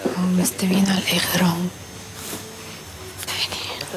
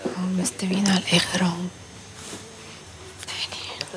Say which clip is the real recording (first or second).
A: first